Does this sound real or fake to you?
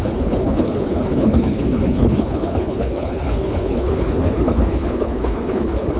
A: fake